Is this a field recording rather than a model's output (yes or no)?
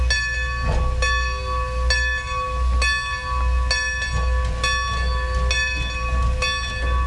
yes